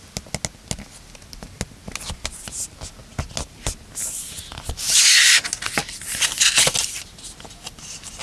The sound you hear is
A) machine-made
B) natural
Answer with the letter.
B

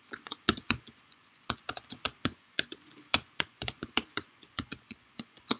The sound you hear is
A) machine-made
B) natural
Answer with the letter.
A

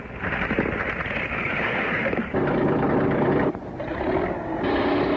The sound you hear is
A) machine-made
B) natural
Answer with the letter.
B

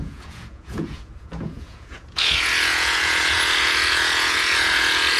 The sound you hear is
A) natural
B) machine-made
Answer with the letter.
B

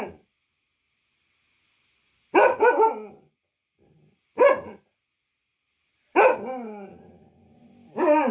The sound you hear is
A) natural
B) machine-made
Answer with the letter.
A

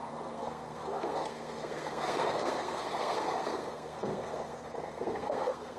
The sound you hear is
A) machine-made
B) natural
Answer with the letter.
A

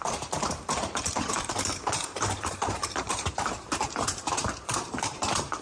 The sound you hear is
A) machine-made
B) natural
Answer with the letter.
A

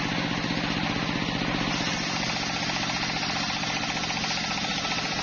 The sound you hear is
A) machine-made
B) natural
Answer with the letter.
B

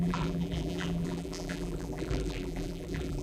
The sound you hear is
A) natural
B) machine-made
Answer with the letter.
B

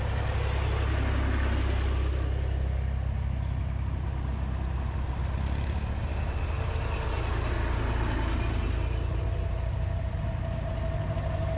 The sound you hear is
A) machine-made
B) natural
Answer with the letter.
B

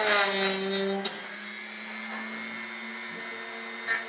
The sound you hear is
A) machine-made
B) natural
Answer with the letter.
B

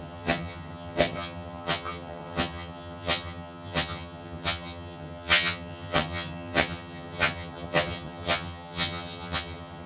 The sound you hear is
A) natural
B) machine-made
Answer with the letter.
B